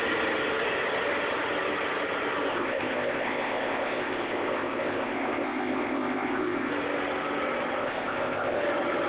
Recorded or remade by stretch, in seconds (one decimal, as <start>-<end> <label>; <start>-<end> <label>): 0.0-2.5 recorded; 2.5-6.7 remade; 6.7-7.8 recorded; 7.8-8.6 remade; 8.6-9.1 recorded